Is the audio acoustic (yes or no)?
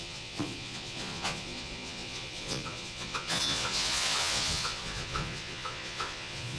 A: no